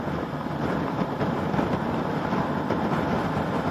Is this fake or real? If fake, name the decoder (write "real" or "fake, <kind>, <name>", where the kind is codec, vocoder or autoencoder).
real